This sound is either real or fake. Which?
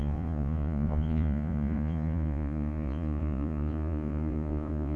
fake